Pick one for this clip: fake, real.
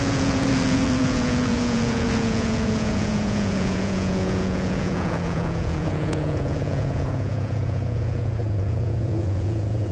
fake